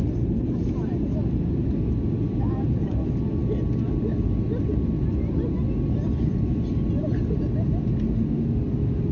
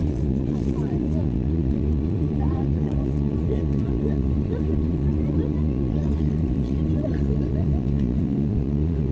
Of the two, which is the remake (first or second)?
second